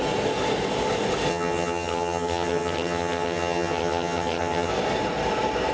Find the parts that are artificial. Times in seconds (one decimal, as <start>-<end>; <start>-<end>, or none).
1.3-4.7